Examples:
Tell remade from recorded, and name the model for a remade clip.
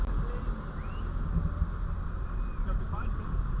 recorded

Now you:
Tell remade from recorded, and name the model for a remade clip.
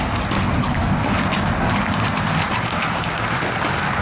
recorded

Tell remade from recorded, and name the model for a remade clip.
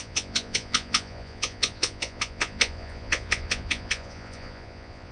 remade, vocoder, Vocos